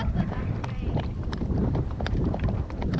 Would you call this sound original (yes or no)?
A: no